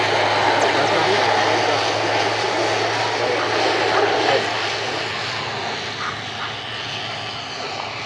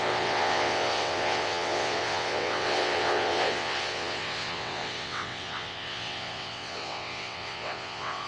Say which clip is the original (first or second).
first